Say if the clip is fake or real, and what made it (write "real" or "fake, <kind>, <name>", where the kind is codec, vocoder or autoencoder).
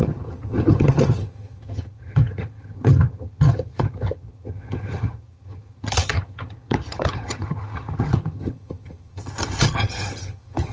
fake, vocoder, HiFi-GAN